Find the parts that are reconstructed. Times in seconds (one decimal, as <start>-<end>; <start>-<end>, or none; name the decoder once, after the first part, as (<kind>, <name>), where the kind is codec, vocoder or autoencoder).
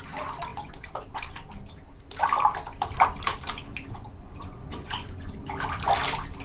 0.5-1.2 (vocoder, Vocos); 3.7-5.3